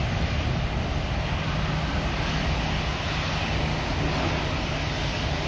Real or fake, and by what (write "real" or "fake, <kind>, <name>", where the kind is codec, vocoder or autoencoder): real